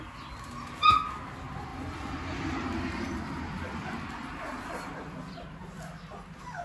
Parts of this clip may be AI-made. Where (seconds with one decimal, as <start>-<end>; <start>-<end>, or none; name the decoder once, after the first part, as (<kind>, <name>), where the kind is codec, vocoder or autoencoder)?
1.7-5.7 (vocoder, BigVGAN v2)